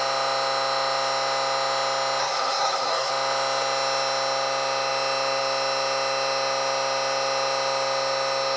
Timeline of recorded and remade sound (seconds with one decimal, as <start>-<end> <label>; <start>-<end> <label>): 0.0-2.2 recorded; 2.2-3.1 remade; 3.1-8.6 recorded